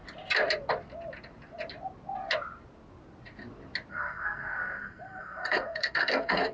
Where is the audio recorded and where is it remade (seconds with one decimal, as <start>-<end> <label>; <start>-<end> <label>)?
0.0-3.9 recorded; 3.9-6.5 remade

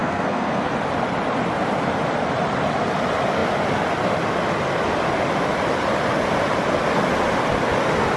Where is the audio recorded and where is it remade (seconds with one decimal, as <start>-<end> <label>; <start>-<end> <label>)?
0.0-0.7 remade; 0.7-8.2 recorded

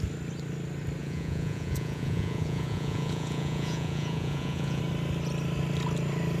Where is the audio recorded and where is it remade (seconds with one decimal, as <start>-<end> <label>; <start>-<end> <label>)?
0.0-1.0 recorded; 1.0-4.8 remade; 4.8-6.4 recorded

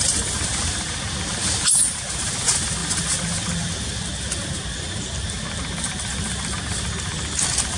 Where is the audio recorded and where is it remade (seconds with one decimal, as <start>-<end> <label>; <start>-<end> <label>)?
0.0-7.8 recorded

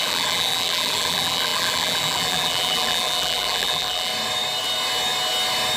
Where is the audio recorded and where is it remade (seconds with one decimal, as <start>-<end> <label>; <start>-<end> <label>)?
0.0-4.1 remade; 4.1-5.8 recorded